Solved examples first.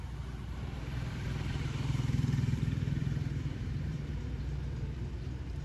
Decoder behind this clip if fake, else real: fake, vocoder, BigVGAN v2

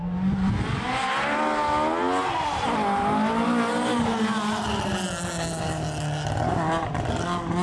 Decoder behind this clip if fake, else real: real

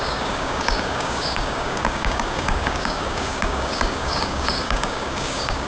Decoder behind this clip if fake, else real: fake, codec, DAC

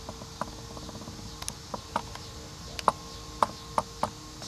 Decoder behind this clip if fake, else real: real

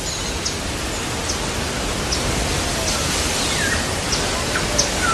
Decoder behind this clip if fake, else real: real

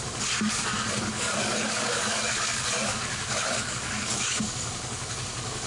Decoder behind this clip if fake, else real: fake, codec, DAC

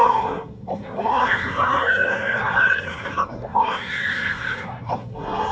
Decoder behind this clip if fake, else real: fake, codec, SNAC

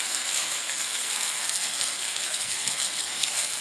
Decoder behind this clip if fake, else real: fake, codec, SNAC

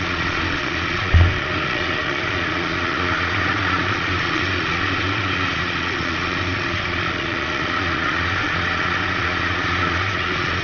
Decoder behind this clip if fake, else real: fake, vocoder, Vocos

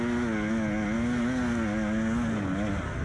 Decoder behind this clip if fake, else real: real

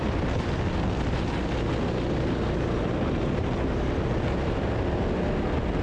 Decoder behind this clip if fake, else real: real